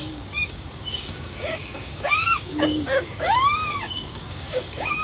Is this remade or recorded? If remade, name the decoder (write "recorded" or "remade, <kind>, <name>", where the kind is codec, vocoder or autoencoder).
remade, codec, DAC